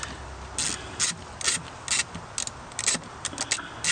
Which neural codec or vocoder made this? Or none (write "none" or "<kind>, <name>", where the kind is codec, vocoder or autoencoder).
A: none